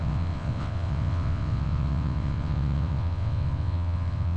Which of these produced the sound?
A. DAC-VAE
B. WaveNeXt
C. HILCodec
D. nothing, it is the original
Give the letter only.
B